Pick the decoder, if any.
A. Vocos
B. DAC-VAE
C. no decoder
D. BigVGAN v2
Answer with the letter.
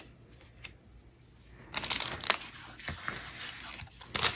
C